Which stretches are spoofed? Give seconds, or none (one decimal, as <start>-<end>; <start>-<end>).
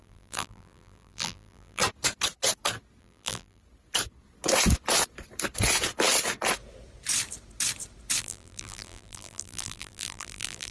0.0-1.8; 3.0-3.6; 8.2-10.7